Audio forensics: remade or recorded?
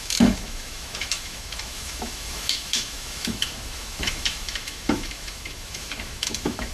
remade